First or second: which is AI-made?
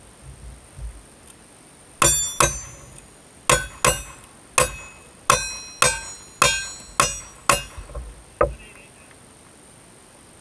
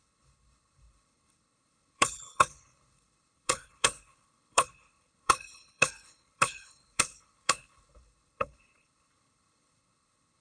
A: second